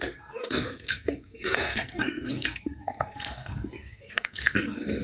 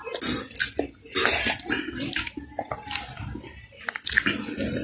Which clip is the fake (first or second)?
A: first